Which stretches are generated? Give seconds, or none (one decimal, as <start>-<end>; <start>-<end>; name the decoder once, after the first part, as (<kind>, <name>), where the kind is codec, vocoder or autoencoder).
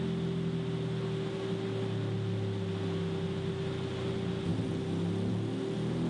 none